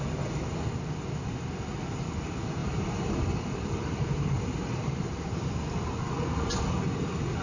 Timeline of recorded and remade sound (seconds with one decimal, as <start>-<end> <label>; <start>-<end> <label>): 0.0-2.6 recorded; 2.6-6.0 remade; 6.0-7.4 recorded